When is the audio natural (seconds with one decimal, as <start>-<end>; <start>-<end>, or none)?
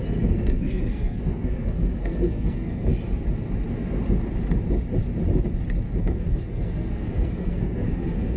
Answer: 2.9-6.0